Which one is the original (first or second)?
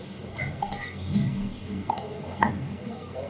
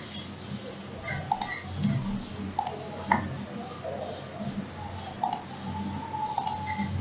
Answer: second